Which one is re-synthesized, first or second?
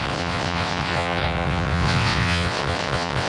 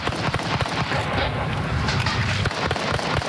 first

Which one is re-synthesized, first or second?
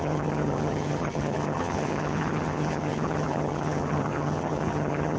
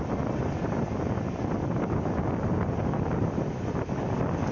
first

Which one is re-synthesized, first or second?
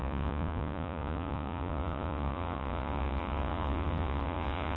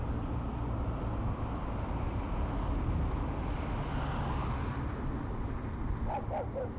first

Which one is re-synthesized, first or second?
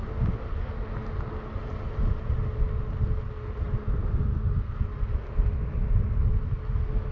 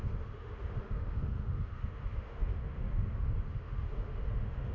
second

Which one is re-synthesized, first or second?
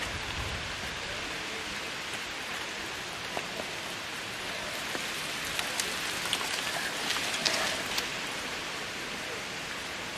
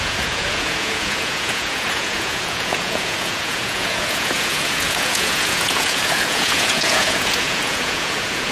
second